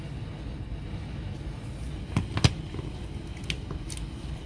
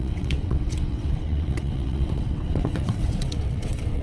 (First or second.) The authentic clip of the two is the first